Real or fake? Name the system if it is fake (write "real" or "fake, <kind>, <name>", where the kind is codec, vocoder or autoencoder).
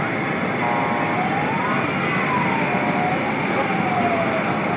real